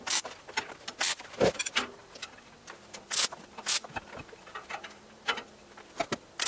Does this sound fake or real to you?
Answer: real